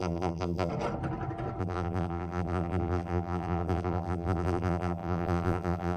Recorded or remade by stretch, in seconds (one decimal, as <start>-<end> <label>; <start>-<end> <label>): 0.0-0.7 remade; 0.7-1.6 recorded; 1.6-6.0 remade